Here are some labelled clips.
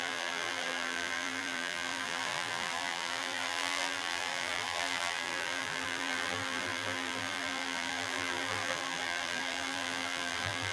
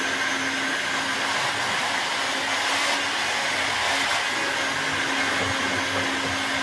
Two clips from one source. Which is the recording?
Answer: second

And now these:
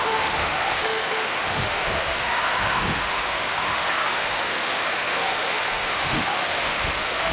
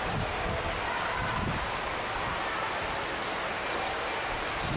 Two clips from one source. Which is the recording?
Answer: second